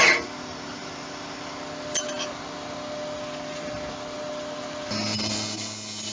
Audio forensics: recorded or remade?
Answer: recorded